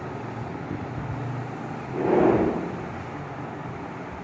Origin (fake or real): real